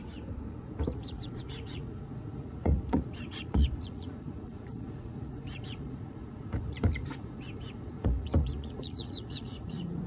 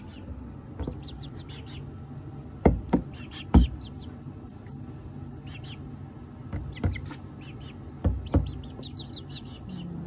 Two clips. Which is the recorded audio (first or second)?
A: second